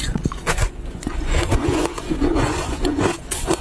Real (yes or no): no